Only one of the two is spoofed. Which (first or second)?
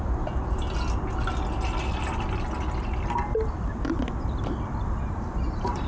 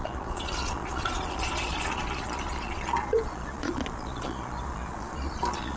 second